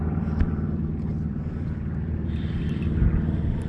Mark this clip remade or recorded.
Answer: remade